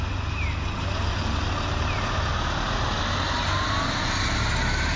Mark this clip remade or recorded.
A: recorded